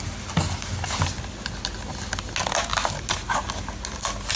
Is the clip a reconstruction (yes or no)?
no